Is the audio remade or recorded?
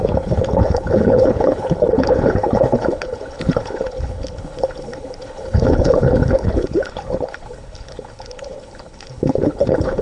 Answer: remade